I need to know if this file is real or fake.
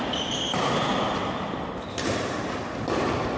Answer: real